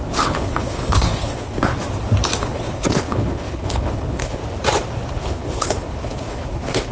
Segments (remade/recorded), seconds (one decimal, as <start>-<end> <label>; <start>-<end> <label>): 0.0-1.7 remade; 1.7-2.4 recorded; 2.4-4.4 remade; 4.4-5.1 recorded; 5.1-6.9 remade